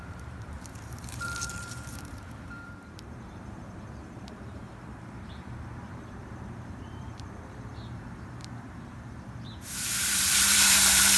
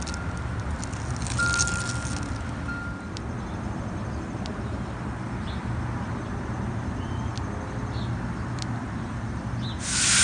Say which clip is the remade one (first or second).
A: first